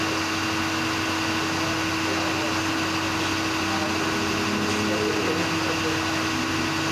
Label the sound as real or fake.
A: real